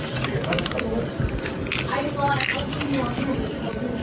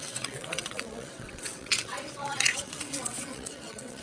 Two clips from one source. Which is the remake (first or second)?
second